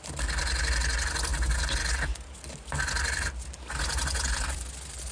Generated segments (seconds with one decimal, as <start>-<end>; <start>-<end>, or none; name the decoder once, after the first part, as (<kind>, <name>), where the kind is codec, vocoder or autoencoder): none